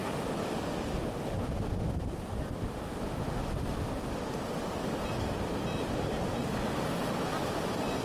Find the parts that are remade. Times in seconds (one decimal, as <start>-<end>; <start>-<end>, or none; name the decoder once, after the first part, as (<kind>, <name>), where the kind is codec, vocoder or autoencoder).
none